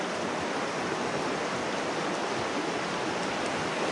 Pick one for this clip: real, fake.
real